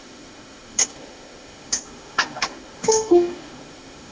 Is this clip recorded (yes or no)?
no